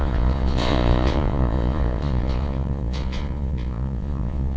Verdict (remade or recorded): remade